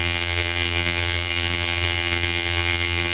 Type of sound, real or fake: fake